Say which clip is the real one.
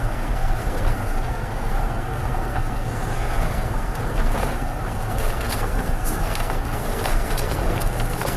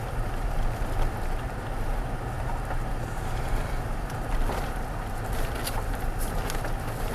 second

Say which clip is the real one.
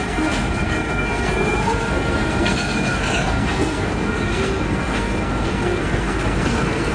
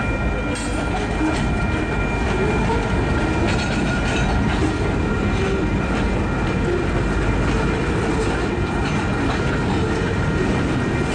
second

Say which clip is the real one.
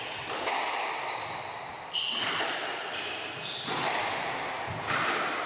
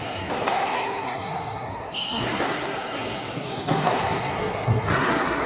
first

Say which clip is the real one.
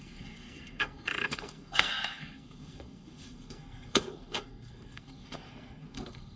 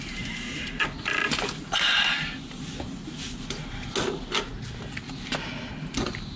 second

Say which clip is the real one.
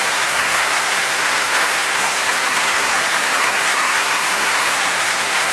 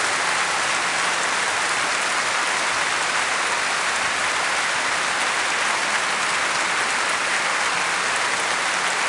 second